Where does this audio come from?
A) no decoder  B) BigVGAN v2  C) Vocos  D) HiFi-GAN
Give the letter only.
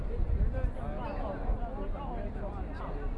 A